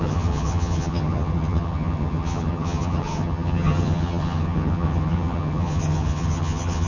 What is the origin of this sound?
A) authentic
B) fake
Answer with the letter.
B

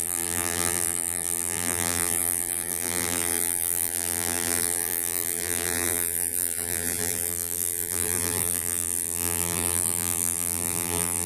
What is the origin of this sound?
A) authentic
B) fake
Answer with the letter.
B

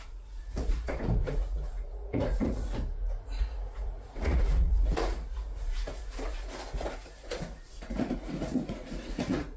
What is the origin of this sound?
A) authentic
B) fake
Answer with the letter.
B